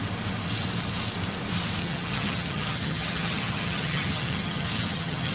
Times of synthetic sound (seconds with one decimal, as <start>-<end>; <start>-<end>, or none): 1.8-5.3